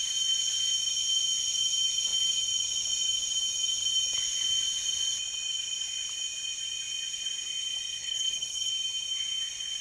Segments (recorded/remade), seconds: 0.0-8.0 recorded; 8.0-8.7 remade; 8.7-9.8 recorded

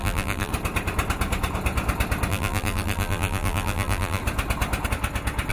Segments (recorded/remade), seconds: 0.0-0.5 remade; 0.5-2.3 recorded; 2.3-4.2 remade; 4.2-5.5 recorded

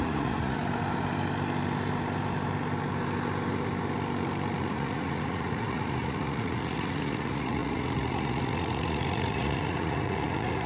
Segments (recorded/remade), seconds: 0.0-0.6 remade; 0.6-4.6 recorded; 4.6-10.7 remade

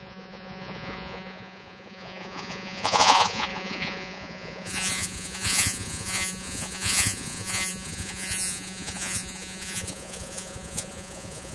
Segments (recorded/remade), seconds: 0.0-11.5 remade

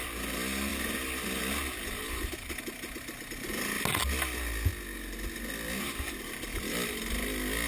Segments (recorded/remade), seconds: 0.0-7.7 recorded